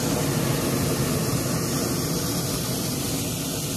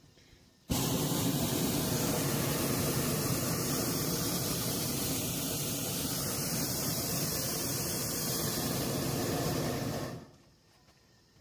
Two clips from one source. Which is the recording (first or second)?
first